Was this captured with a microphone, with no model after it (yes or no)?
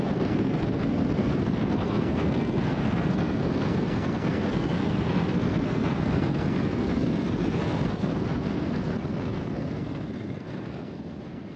no